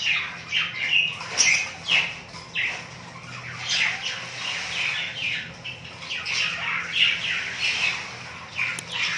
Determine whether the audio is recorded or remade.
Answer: recorded